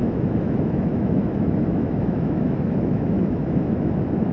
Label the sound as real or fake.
fake